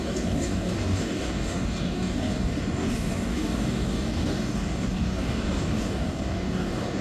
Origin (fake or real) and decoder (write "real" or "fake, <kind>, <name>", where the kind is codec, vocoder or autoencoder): fake, codec, DAC